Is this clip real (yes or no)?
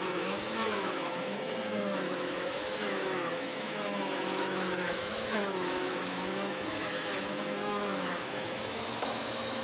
no